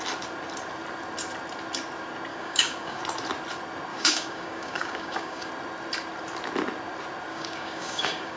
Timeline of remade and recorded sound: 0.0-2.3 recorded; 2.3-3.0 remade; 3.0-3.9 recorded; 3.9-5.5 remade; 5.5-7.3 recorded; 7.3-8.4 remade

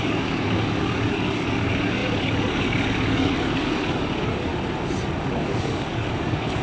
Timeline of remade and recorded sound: 0.0-4.5 remade; 4.5-5.2 recorded; 5.2-6.6 remade